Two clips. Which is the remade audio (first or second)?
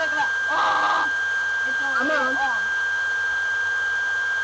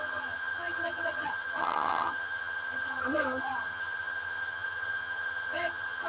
second